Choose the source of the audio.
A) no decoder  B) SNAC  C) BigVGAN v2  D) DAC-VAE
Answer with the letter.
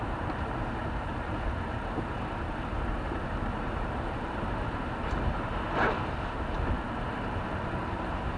C